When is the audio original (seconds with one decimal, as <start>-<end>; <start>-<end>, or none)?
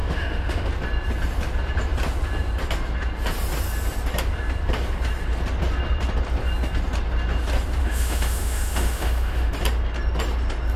0.7-7.8; 9.5-10.8